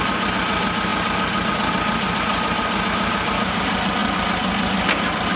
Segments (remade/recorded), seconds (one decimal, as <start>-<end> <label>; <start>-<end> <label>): 0.0-5.4 recorded

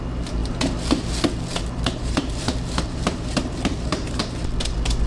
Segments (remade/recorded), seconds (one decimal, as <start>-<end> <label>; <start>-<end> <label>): 0.0-1.5 recorded; 1.5-4.2 remade; 4.2-5.1 recorded

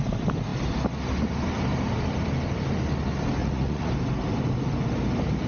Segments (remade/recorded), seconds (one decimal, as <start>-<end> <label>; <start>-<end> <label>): 0.0-3.4 recorded; 3.4-3.9 remade; 3.9-5.5 recorded

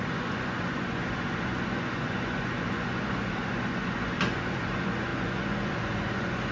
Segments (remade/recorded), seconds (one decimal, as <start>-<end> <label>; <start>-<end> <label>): 0.0-6.5 remade

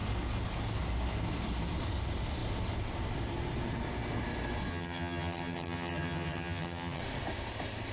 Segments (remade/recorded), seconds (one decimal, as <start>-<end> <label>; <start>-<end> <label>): 0.0-4.7 recorded; 4.7-7.0 remade; 7.0-7.9 recorded

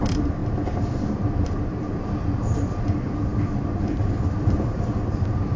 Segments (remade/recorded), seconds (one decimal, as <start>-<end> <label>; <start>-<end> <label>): 0.0-5.6 remade